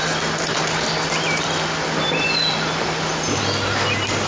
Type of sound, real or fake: real